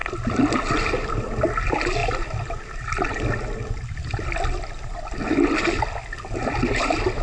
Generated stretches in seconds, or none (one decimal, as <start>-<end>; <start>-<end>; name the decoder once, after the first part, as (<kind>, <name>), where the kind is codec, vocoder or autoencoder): none